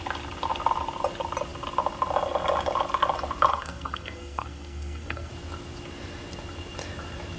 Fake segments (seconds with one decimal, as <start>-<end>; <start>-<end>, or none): 3.5-5.3

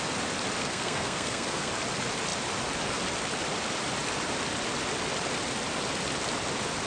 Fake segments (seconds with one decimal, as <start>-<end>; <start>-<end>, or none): 0.6-1.7